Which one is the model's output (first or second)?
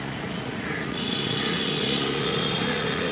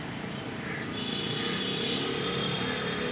first